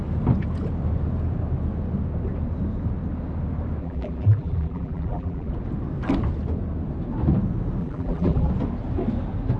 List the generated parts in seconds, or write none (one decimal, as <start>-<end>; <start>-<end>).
3.8-5.5; 7.8-8.5